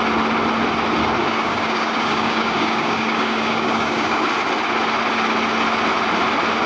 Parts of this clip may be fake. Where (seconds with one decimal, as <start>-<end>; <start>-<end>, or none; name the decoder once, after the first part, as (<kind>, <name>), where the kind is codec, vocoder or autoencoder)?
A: 1.2-4.3 (codec, DAC)